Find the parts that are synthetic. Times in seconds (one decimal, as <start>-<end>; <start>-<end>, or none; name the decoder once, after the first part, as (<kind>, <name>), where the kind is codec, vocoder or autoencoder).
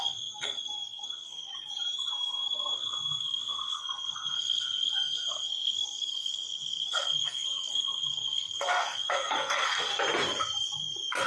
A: 0.0-1.5 (codec, SNAC); 2.1-9.9